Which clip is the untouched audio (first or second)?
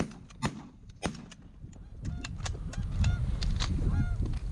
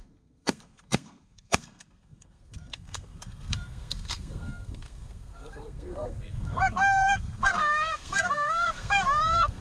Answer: first